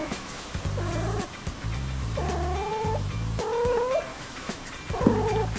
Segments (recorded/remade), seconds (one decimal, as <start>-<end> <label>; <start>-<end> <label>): 0.0-0.6 remade; 0.6-4.1 recorded; 4.1-4.7 remade; 4.7-5.6 recorded